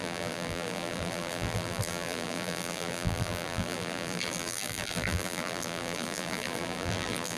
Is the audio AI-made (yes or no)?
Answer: yes